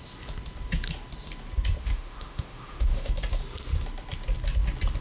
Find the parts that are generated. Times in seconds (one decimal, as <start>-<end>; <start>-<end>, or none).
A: 1.8-3.1